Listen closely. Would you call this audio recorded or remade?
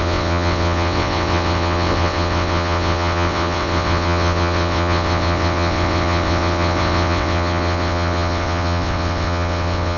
remade